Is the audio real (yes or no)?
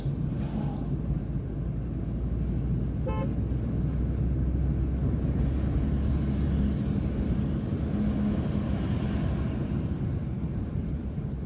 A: yes